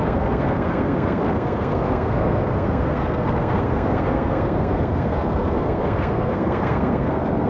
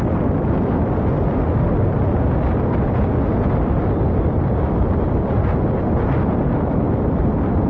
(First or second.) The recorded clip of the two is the second